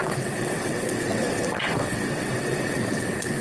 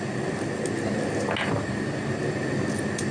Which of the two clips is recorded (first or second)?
second